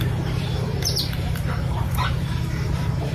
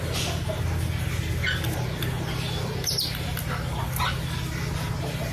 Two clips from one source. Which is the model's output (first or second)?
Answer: first